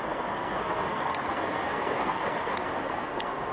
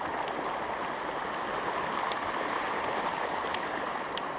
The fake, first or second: first